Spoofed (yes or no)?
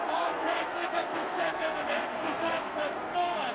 yes